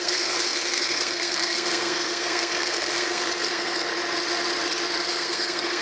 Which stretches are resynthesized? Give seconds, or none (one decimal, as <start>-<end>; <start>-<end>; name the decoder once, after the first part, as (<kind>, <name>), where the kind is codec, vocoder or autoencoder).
0.0-3.9 (codec, SNAC); 5.1-5.8